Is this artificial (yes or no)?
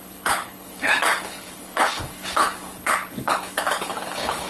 yes